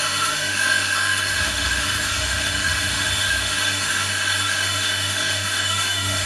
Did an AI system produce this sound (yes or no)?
yes